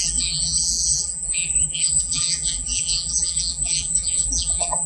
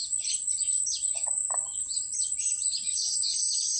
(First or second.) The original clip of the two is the second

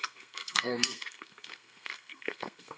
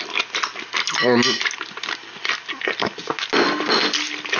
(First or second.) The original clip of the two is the second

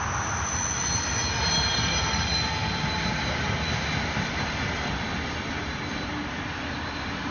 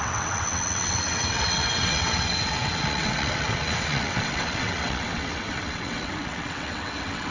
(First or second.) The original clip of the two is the first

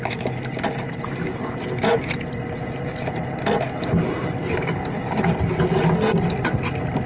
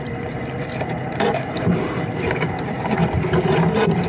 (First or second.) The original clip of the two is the first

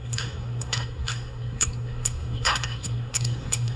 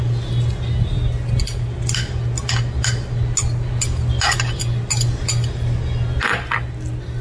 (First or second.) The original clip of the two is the second